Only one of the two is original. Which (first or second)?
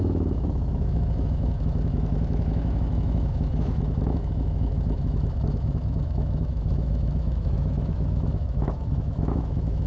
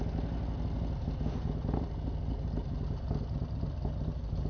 second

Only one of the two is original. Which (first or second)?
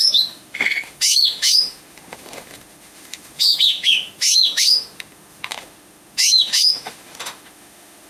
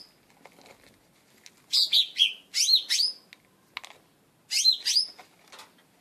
second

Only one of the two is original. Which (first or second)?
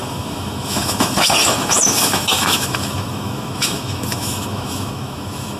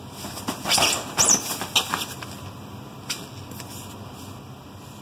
second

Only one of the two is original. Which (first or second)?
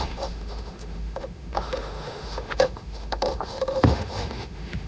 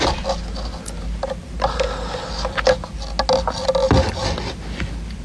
second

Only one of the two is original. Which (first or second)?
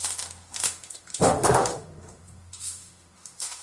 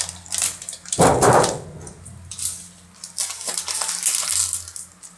second